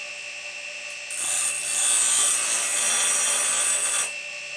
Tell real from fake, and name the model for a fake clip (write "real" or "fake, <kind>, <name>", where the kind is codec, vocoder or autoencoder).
real